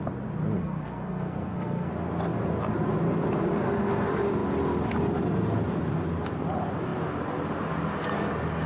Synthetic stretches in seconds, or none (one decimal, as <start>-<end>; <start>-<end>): 0.6-1.9